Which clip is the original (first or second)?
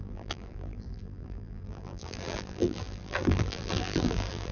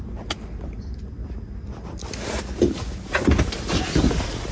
second